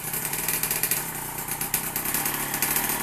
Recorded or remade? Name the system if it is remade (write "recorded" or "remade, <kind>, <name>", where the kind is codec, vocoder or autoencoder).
recorded